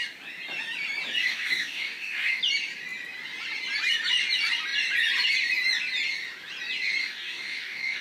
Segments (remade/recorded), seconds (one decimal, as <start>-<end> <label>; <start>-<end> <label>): 0.0-1.2 recorded; 1.2-2.4 remade; 2.4-7.0 recorded; 7.0-8.0 remade